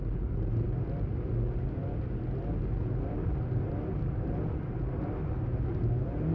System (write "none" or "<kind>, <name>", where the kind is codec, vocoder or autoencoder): none